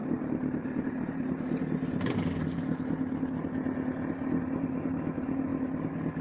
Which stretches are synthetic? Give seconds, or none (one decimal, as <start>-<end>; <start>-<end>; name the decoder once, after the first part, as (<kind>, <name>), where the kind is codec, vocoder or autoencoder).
0.0-1.3 (vocoder, BigVGAN v2)